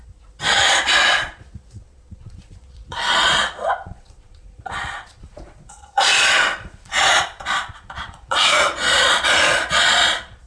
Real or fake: fake